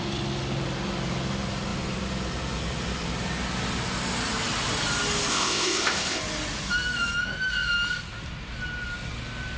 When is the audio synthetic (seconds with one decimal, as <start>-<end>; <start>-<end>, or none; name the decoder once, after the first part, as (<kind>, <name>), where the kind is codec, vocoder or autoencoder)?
5.3-6.2 (codec, ZipCodec)